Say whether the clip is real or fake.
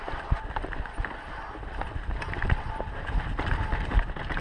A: real